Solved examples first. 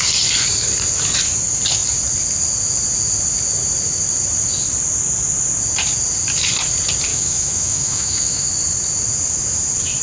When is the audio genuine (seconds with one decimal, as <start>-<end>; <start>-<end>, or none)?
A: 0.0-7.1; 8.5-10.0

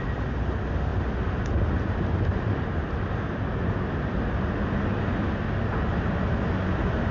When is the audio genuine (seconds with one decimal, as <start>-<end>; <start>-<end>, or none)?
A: 0.0-7.1

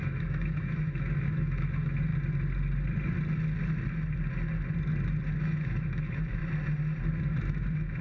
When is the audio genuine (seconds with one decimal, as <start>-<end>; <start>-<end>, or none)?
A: 2.1-5.3; 6.4-7.2

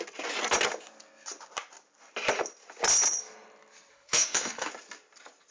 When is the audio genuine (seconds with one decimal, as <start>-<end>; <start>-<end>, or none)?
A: 0.0-3.9; 4.7-5.5